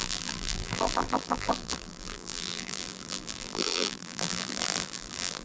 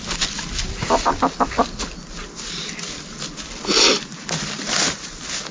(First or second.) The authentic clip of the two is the second